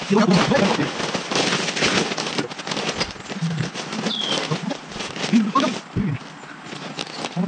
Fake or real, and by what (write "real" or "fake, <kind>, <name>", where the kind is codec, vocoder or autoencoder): real